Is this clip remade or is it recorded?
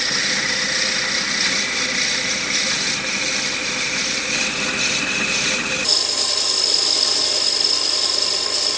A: recorded